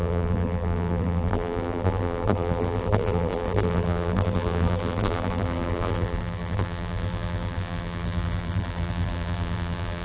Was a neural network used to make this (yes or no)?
yes